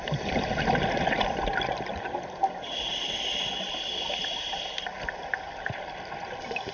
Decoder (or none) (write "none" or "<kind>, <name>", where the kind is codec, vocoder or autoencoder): none